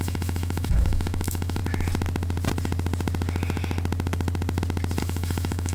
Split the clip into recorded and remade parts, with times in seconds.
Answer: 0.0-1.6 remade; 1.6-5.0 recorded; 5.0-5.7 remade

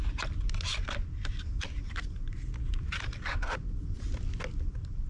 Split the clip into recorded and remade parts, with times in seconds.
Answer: 0.0-5.1 recorded

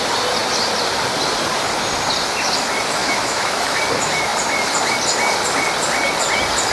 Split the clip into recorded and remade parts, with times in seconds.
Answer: 0.0-3.0 recorded; 3.0-3.8 remade; 3.8-6.7 recorded

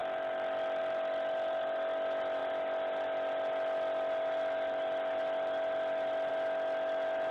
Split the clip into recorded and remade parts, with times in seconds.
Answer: 0.0-7.3 recorded

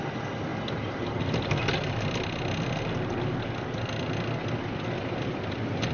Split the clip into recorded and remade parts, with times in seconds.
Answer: 0.0-5.9 recorded

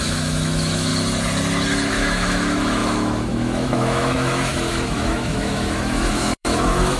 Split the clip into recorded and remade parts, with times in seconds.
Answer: 0.0-0.9 remade; 0.9-1.9 recorded; 1.9-7.0 remade

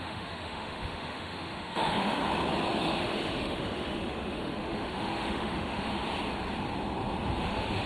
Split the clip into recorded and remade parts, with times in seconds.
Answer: 0.0-2.2 remade; 2.2-2.8 recorded; 2.8-5.9 remade; 5.9-7.4 recorded; 7.4-7.9 remade

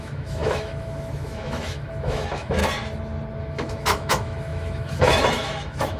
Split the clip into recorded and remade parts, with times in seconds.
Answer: 0.0-2.6 remade; 2.6-3.4 recorded; 3.4-6.0 remade